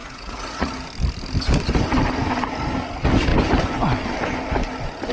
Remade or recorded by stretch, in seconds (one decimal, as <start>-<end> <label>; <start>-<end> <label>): 0.0-0.7 remade; 0.7-5.1 recorded